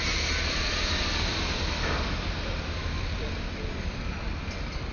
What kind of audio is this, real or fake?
real